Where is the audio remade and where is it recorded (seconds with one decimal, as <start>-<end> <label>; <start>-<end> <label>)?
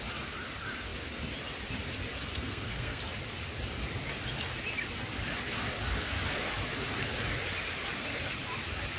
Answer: 0.0-2.3 recorded; 2.3-3.0 remade; 3.0-9.0 recorded